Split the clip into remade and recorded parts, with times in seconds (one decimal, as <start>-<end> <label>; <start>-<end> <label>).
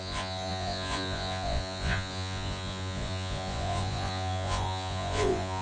0.0-5.6 remade